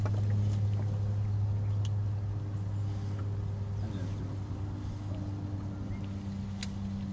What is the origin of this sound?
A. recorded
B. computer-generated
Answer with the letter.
A